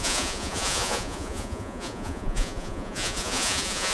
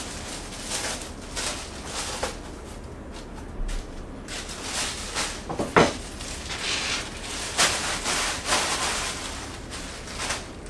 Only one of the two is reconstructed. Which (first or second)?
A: first